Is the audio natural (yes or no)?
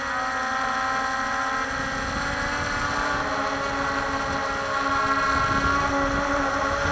yes